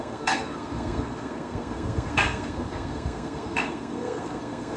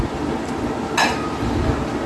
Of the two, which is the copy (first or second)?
first